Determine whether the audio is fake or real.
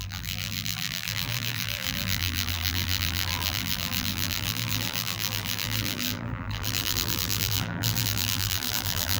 fake